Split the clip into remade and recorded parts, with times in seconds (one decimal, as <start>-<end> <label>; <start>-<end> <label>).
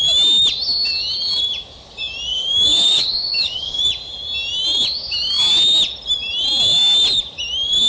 0.0-2.3 recorded; 2.3-3.8 remade; 3.8-7.9 recorded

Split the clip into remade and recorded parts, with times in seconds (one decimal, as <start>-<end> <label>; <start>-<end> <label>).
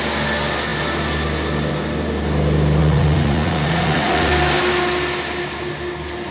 0.0-2.8 recorded; 2.8-4.3 remade; 4.3-6.3 recorded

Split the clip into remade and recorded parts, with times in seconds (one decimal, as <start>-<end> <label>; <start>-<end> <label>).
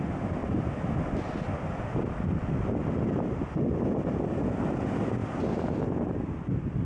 0.0-6.8 recorded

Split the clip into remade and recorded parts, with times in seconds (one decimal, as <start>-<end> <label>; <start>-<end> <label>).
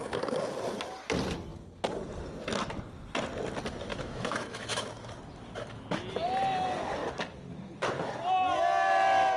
0.0-3.9 recorded; 3.9-5.1 remade; 5.1-9.4 recorded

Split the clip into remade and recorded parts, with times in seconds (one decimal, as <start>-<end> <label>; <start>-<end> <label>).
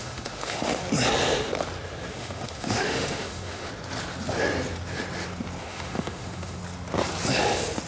0.0-0.8 remade; 0.8-2.1 recorded; 2.1-3.7 remade; 3.7-5.6 recorded; 5.6-6.6 remade; 6.6-7.9 recorded